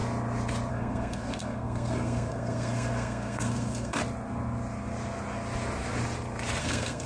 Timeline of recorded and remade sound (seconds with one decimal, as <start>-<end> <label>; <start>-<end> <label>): 0.0-0.7 recorded; 0.7-4.0 remade; 4.0-6.6 recorded; 6.6-7.1 remade